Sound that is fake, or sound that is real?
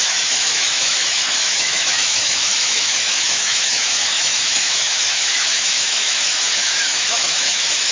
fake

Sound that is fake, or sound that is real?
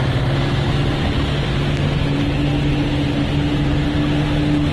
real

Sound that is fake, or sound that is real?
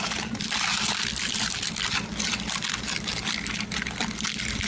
fake